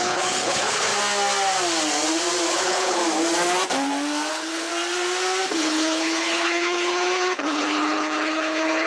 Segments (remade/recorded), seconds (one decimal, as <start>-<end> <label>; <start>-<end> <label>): 0.0-0.9 remade; 0.9-2.5 recorded; 2.5-3.0 remade; 3.0-4.3 recorded; 4.3-4.7 remade; 4.7-5.5 recorded; 5.5-8.9 remade